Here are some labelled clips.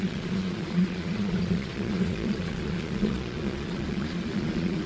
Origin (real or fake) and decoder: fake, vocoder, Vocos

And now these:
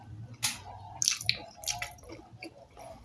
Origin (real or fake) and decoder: real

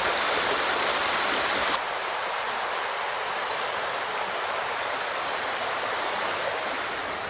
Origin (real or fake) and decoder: real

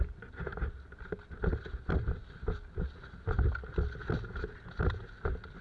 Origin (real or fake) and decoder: real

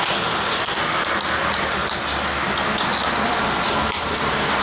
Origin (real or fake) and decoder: real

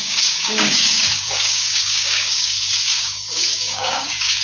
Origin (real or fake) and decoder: fake, codec, DAC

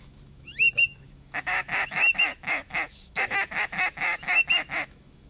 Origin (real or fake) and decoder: fake, autoencoder, DAC-VAE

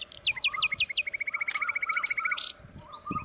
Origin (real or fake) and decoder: real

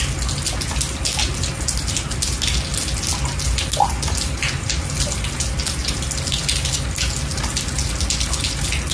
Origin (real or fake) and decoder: real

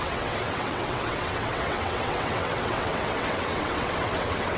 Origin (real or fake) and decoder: fake, vocoder, WaveNeXt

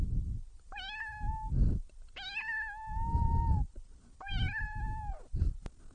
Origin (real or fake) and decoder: real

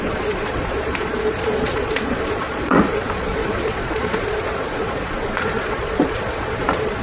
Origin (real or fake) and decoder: fake, vocoder, Vocos